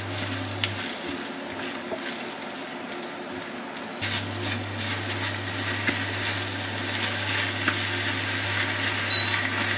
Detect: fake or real real